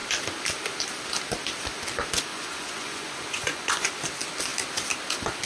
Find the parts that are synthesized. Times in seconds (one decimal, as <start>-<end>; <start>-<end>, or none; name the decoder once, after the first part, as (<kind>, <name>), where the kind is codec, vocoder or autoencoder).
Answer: 2.3-3.9 (vocoder, Vocos)

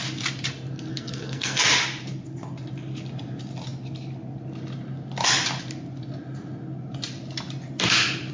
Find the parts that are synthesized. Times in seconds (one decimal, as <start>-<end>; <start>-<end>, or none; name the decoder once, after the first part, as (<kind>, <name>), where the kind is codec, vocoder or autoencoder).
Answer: 0.9-1.6 (codec, SNAC)